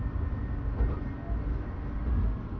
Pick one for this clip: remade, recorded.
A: recorded